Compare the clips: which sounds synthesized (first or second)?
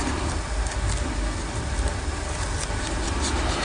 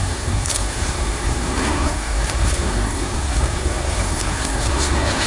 second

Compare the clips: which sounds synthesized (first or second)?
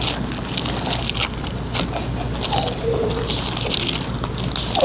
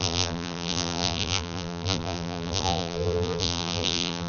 second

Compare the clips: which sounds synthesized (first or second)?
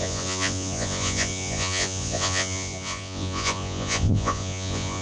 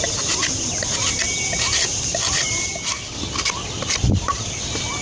first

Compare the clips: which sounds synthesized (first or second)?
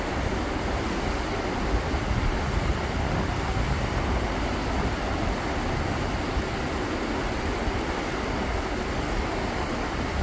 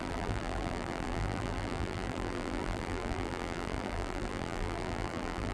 second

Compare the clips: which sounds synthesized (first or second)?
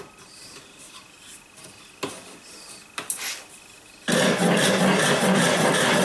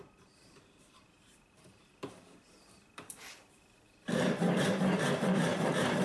second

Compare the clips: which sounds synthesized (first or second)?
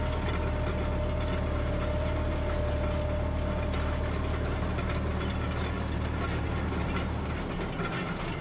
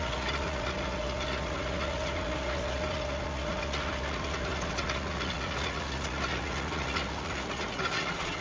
second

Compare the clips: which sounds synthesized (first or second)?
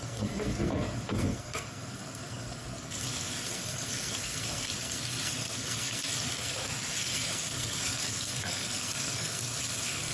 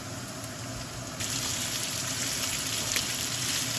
first